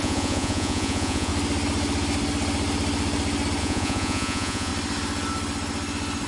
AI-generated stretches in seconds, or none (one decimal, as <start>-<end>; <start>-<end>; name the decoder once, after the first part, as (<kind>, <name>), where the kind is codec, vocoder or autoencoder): 0.0-1.3 (vocoder, Vocos); 3.6-4.7